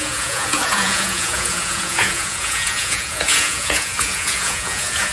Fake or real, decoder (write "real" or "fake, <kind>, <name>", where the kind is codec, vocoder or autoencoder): fake, vocoder, Vocos